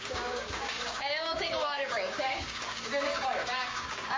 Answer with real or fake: fake